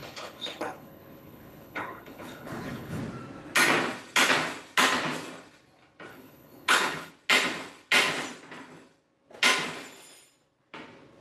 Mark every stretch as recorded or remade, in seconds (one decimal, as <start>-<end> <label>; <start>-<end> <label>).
0.0-3.0 remade; 3.0-6.1 recorded; 6.1-7.1 remade; 7.1-11.2 recorded